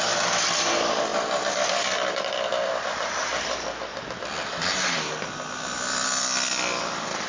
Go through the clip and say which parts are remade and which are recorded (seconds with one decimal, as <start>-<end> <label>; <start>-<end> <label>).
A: 0.0-1.1 remade; 1.1-1.7 recorded; 1.7-3.3 remade; 3.3-4.5 recorded; 4.5-7.3 remade